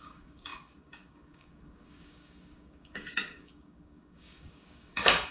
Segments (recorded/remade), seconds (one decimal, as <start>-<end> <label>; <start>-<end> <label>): 0.0-5.3 remade